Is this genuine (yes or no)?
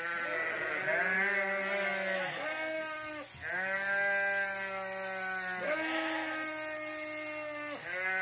yes